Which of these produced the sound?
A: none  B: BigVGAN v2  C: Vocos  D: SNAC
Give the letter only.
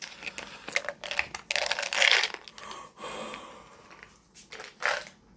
A